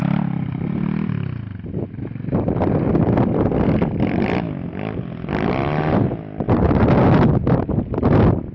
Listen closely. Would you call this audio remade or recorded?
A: recorded